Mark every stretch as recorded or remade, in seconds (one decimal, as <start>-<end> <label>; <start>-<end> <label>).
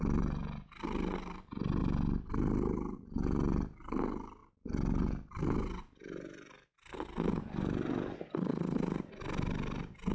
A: 0.0-4.4 recorded; 4.4-5.8 remade; 5.8-8.5 recorded; 8.5-9.1 remade; 9.1-10.1 recorded